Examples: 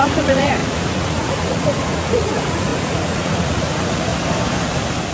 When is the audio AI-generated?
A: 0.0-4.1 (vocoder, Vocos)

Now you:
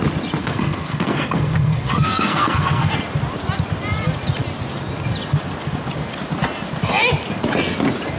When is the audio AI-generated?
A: 0.4-2.9 (codec, SNAC)

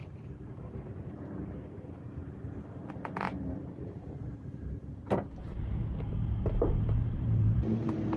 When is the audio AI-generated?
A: 0.0-5.8 (vocoder, BigVGAN v2); 6.3-8.2